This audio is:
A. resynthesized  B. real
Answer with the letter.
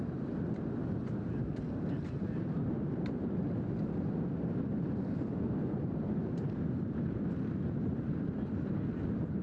B